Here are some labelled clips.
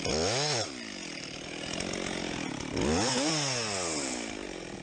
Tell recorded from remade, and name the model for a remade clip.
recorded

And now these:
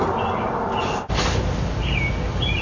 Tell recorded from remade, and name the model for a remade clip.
recorded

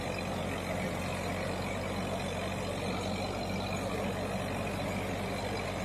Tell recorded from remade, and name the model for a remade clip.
recorded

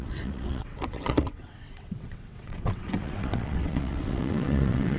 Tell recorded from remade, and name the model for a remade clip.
remade, vocoder, WaveNeXt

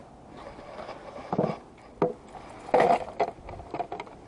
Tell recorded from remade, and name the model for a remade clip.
recorded